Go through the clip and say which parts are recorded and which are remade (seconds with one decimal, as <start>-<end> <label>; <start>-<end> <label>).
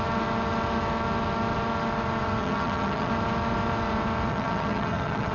0.0-2.4 recorded; 2.4-3.1 remade; 3.1-4.3 recorded; 4.3-5.3 remade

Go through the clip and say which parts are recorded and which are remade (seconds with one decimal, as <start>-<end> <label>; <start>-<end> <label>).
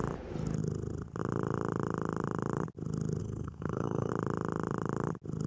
0.0-3.2 recorded; 3.2-4.1 remade; 4.1-5.5 recorded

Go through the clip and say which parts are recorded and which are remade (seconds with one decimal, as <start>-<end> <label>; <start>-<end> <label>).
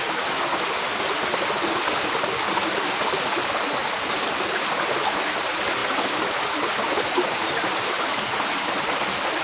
0.0-3.8 recorded; 3.8-4.5 remade; 4.5-9.4 recorded